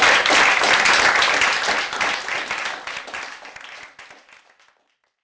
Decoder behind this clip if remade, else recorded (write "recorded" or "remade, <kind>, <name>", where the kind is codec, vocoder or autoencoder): recorded